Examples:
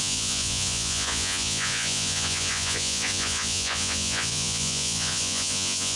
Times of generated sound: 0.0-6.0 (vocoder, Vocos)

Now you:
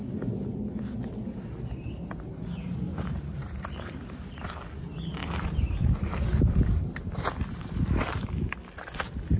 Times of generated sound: 2.9-4.4 (vocoder, BigVGAN v2); 5.2-7.0